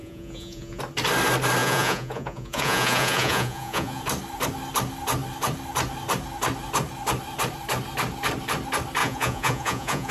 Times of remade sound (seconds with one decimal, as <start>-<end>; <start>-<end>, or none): 0.0-0.8; 1.6-4.0; 9.0-10.1

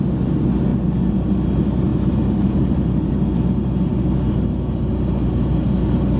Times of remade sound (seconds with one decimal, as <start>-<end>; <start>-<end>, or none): none

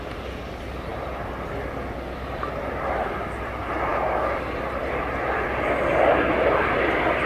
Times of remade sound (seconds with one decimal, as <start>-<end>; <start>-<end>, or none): none

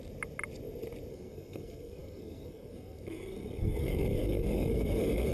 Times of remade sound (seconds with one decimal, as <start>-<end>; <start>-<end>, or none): 1.1-5.3